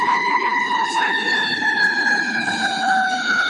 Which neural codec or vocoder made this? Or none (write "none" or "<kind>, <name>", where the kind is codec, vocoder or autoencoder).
codec, HILCodec